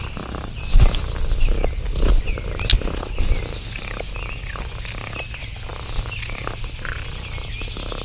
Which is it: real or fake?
real